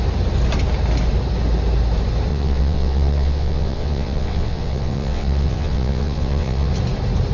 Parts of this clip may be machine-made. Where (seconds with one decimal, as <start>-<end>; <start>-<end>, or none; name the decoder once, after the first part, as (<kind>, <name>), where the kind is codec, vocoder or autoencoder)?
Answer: 2.3-6.7 (vocoder, WaveNeXt)